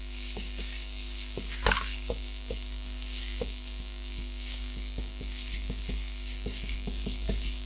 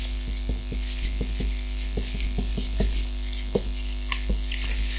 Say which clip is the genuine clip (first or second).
second